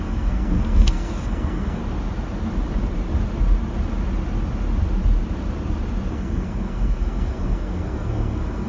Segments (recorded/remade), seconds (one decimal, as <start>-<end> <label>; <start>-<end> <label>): 0.0-1.8 remade; 1.8-6.1 recorded; 6.1-8.7 remade